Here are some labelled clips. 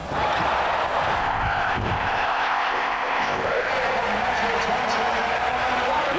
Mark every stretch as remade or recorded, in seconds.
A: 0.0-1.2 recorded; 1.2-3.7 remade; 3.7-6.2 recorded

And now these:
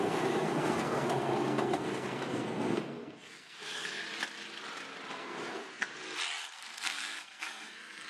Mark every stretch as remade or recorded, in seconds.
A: 0.0-4.0 remade; 4.0-5.1 recorded; 5.1-5.9 remade; 5.9-6.5 recorded; 6.5-8.1 remade

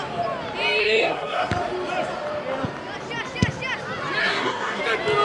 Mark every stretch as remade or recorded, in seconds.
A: 0.0-0.8 recorded; 0.8-1.5 remade; 1.5-4.2 recorded; 4.2-4.8 remade; 4.8-5.2 recorded

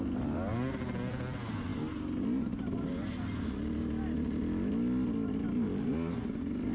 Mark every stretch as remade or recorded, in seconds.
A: 0.0-6.7 recorded

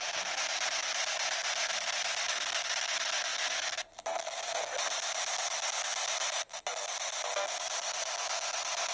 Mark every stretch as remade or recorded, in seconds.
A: 0.0-8.9 recorded

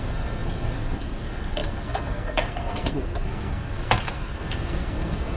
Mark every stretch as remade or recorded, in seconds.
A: 0.0-5.4 remade